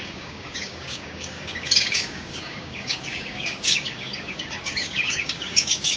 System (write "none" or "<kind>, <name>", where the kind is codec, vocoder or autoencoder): codec, DAC